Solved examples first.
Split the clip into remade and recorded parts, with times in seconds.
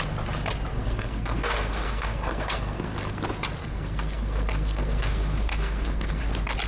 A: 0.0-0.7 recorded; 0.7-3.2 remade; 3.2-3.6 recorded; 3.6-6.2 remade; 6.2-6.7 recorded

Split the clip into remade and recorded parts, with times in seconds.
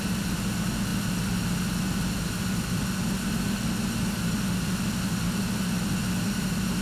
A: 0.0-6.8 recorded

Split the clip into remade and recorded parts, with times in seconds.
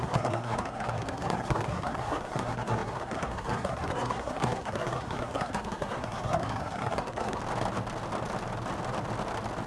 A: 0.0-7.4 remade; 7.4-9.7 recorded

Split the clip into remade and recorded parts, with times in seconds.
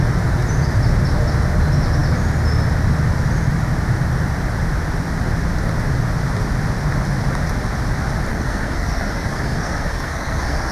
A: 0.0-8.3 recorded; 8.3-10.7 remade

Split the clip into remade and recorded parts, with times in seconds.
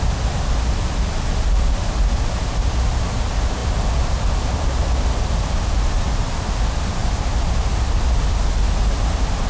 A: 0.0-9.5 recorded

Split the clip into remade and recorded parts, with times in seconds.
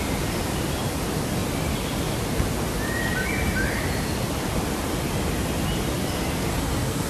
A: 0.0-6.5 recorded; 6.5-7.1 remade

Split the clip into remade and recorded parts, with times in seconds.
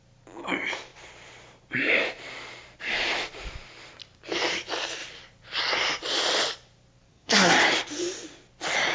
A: 0.0-7.1 recorded; 7.1-7.6 remade; 7.6-8.9 recorded